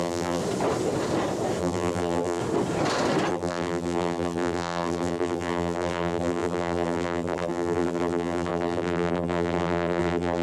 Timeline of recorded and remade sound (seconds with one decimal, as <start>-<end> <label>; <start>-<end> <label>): 0.0-0.4 remade; 0.4-1.6 recorded; 1.6-2.4 remade; 2.4-3.3 recorded; 3.3-10.4 remade

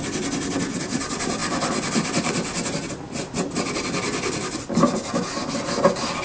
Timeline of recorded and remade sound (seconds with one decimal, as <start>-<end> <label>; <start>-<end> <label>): 0.0-1.4 recorded; 1.4-4.7 remade; 4.7-6.2 recorded

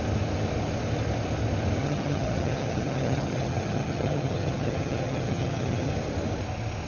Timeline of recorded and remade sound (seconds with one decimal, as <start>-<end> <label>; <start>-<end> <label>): 0.0-1.8 recorded; 1.8-5.9 remade; 5.9-6.9 recorded

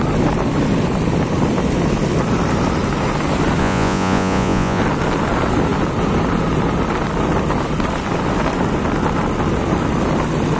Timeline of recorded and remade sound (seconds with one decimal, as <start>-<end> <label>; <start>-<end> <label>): 0.0-3.6 recorded; 3.6-4.8 remade; 4.8-10.6 recorded